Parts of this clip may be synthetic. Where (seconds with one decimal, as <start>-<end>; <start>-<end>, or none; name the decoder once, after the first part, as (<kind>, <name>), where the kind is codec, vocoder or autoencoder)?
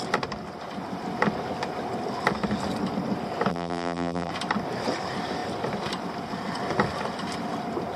3.5-4.3 (vocoder, BigVGAN v2)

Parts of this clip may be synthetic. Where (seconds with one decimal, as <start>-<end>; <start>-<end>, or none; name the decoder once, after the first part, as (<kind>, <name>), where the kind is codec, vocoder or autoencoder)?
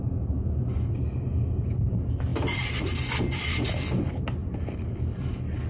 2.3-3.2 (vocoder, BigVGAN v2); 4.4-4.9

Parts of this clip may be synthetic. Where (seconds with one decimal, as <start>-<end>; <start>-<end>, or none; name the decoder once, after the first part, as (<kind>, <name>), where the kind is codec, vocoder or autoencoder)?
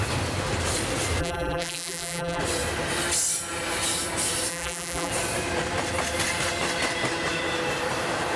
1.2-2.4 (vocoder, BigVGAN v2); 4.5-5.1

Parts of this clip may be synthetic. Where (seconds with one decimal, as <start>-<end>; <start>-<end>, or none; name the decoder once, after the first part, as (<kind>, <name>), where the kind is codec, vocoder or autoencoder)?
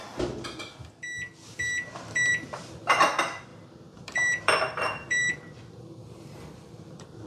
2.3-3.0 (vocoder, BigVGAN v2); 3.5-7.3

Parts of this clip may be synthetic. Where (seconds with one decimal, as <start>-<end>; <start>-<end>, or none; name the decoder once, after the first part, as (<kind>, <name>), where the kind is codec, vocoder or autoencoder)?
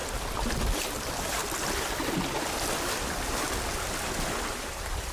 0.7-1.4 (vocoder, BigVGAN v2); 4.5-5.1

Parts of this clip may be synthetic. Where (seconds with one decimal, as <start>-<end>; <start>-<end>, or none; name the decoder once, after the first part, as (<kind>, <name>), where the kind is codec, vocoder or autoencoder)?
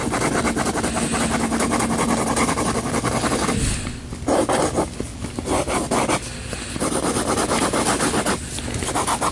none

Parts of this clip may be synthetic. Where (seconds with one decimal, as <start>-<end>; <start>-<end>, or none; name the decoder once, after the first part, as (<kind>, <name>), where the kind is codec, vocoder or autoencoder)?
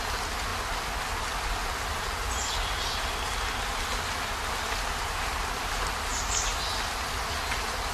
none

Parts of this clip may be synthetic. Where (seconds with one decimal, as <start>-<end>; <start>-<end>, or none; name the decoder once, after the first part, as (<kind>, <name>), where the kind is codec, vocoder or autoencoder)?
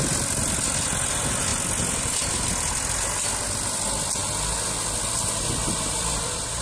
none